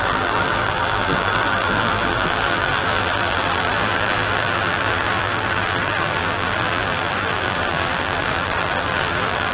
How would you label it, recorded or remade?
remade